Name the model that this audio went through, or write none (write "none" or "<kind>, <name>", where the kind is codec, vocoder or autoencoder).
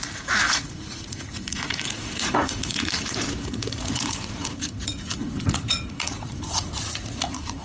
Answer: vocoder, Vocos